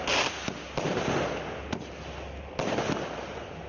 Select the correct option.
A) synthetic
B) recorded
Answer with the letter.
B